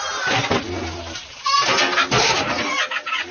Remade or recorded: recorded